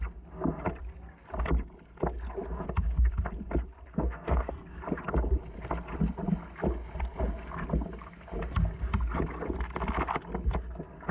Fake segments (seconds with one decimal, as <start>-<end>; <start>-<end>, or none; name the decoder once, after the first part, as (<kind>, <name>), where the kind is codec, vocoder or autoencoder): 3.9-4.5 (codec, SNAC)